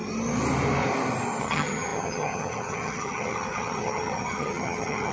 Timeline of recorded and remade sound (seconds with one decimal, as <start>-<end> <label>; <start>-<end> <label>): 0.0-1.4 recorded; 1.4-5.1 remade